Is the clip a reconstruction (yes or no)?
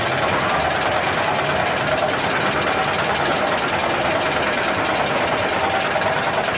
no